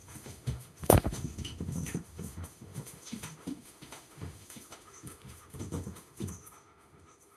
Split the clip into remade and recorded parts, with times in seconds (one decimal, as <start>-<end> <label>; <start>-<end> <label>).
0.0-7.4 remade